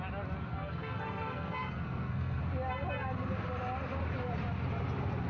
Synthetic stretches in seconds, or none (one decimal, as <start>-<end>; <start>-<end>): 0.5-2.4